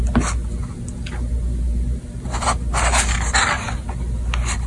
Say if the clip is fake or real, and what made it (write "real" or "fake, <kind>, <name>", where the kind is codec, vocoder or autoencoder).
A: real